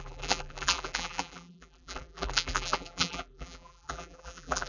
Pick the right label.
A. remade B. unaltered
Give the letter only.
A